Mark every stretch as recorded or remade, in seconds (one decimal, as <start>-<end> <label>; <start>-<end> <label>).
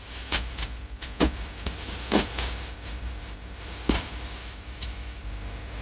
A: 0.0-4.4 recorded; 4.4-5.2 remade; 5.2-5.8 recorded